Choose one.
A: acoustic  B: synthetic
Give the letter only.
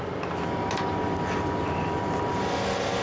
A